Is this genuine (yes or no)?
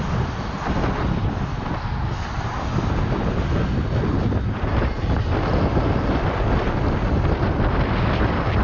yes